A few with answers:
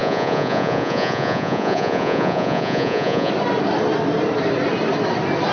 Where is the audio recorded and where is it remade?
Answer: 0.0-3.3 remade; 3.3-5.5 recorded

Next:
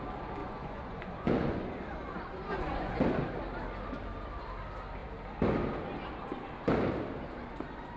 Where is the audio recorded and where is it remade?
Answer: 0.0-0.4 recorded; 0.4-1.6 remade; 1.6-2.5 recorded; 2.5-3.0 remade; 3.0-8.0 recorded

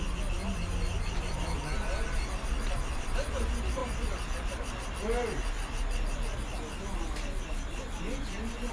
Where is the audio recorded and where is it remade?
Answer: 0.0-8.7 recorded

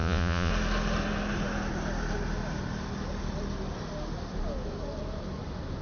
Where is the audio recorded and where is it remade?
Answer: 0.0-0.5 remade; 0.5-5.8 recorded